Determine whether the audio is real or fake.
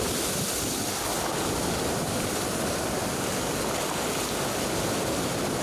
real